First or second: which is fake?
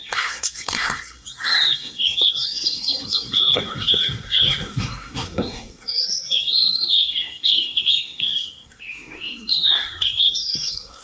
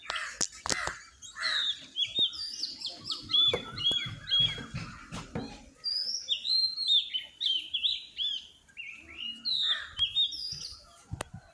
first